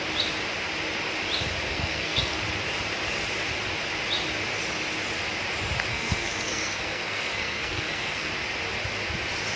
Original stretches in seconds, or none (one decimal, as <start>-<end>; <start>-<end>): 0.0-1.7; 2.4-5.9; 8.3-9.6